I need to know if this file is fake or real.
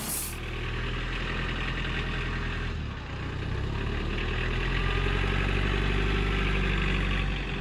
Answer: real